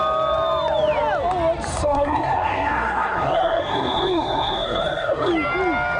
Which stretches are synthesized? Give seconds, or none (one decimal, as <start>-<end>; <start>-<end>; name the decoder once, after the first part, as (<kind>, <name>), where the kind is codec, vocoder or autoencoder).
1.7-5.3 (codec, SNAC)